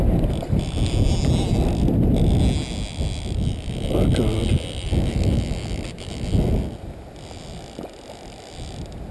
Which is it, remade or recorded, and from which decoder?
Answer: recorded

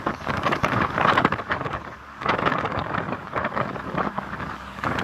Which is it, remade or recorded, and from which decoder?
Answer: remade, codec, DAC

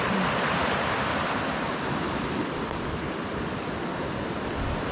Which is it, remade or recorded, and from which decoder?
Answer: recorded